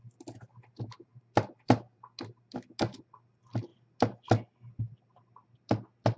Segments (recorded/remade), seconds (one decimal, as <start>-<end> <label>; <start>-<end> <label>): 0.0-6.2 recorded

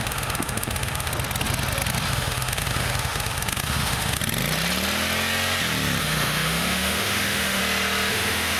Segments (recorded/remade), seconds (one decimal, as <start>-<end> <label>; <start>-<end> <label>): 0.0-1.1 remade; 1.1-2.1 recorded; 2.1-4.2 remade; 4.2-6.0 recorded; 6.0-7.6 remade; 7.6-8.1 recorded; 8.1-8.6 remade

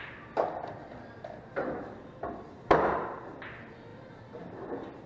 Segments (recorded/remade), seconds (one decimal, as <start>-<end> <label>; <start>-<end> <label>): 0.0-1.5 recorded; 1.5-3.3 remade; 3.3-3.9 recorded; 3.9-5.1 remade

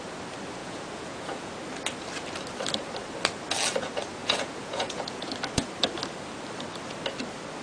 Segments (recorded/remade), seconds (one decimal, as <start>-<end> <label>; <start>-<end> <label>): 0.0-0.6 recorded; 0.6-1.5 remade; 1.5-4.2 recorded; 4.2-5.3 remade; 5.3-7.6 recorded

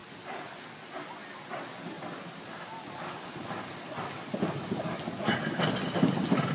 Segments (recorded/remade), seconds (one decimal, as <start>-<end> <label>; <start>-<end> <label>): 0.0-6.5 recorded

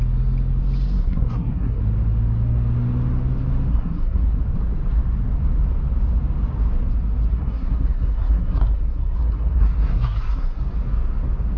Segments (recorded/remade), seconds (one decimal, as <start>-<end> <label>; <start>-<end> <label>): 0.0-1.0 recorded; 1.0-1.8 remade; 1.8-3.7 recorded; 3.7-4.4 remade; 4.4-7.3 recorded; 7.3-10.6 remade; 10.6-11.6 recorded